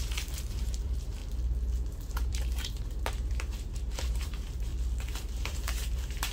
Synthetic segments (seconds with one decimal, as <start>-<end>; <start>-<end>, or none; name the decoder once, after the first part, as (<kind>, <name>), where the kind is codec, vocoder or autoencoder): 0.0-1.2 (vocoder, BigVGAN v2); 1.9-4.7; 5.2-6.3